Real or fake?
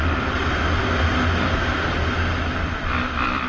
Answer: real